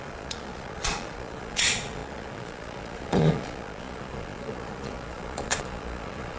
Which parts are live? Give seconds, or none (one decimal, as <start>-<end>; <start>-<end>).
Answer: none